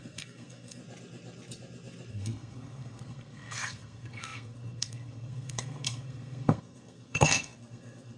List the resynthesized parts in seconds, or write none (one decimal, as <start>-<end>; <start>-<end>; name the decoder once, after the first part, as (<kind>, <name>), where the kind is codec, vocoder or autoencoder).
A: 0.0-0.8 (codec, SNAC); 2.1-8.2

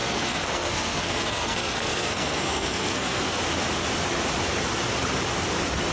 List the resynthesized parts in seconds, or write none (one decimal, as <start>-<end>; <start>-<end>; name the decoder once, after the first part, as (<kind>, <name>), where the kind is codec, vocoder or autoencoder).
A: 0.0-3.4 (codec, SNAC)

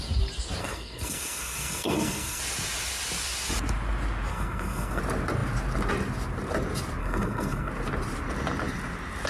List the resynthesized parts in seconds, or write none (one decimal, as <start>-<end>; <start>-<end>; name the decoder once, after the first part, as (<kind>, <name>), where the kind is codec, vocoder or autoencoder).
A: 0.6-2.4 (codec, SNAC); 4.3-5.0; 7.0-7.7

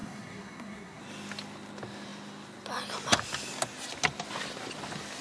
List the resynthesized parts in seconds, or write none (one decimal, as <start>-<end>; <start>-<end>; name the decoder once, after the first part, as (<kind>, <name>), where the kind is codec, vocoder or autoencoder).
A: 0.0-1.0 (codec, SNAC)

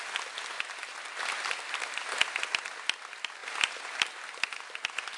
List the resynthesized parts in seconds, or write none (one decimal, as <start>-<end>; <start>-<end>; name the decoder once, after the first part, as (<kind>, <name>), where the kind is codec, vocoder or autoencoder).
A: none

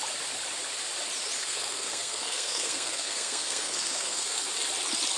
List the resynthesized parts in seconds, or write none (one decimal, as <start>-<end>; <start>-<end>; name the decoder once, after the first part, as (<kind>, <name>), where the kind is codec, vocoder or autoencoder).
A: 1.4-4.5 (codec, SNAC)